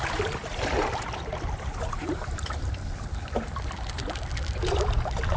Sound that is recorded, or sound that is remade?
remade